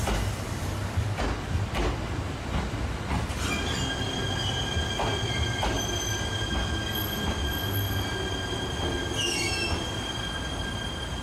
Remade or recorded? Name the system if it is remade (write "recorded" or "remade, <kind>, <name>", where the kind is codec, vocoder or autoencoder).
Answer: recorded